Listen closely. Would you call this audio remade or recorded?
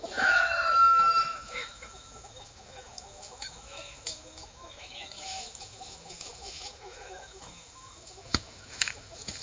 remade